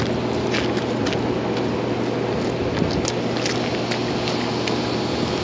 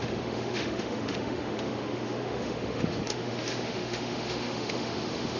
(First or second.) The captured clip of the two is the first